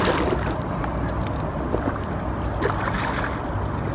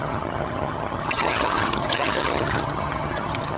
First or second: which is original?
first